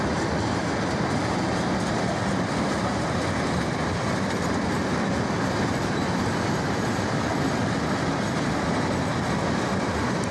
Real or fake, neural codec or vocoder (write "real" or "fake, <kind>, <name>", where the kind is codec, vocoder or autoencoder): real